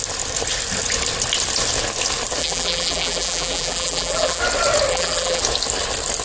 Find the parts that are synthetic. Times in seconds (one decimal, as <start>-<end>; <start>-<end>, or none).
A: 2.4-4.4; 4.9-5.4